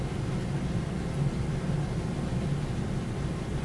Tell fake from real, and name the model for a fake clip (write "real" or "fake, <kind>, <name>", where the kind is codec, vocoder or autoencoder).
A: real